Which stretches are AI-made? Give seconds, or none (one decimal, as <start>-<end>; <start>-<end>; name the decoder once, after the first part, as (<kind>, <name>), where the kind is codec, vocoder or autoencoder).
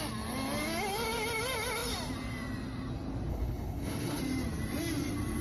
3.3-4.2 (codec, HILCodec)